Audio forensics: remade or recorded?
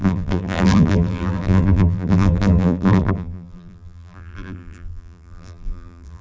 remade